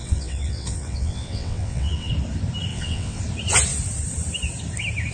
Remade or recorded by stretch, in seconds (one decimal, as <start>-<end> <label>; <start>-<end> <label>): 0.0-2.1 remade; 2.1-2.7 recorded; 2.7-3.2 remade; 3.2-5.1 recorded